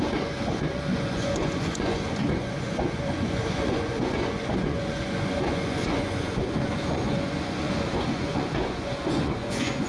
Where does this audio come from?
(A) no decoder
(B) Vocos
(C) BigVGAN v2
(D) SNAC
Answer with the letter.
B